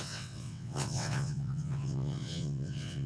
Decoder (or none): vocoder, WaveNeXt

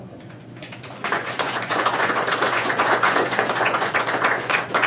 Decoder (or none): vocoder, Vocos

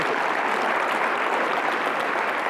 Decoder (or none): vocoder, BigVGAN v2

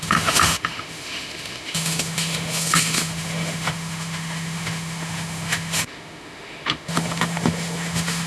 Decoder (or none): autoencoder, DAC-VAE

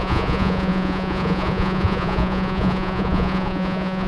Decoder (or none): vocoder, Vocos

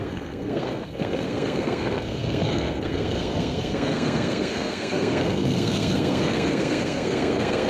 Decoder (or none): codec, SNAC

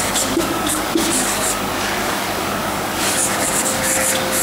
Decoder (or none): codec, DAC